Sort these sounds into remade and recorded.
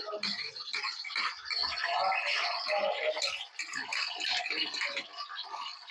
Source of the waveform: recorded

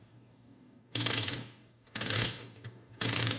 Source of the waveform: remade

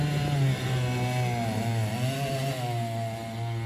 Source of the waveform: recorded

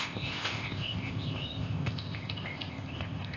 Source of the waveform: remade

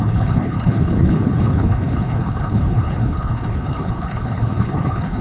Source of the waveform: remade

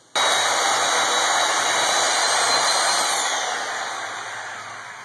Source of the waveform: recorded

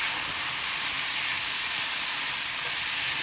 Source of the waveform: recorded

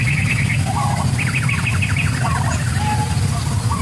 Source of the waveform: recorded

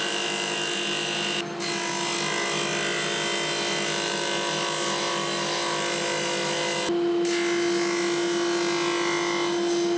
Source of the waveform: recorded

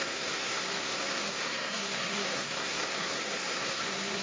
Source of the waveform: remade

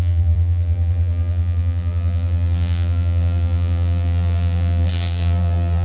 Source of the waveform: remade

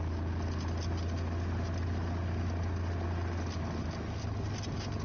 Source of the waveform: recorded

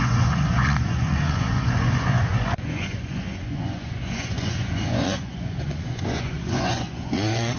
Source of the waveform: remade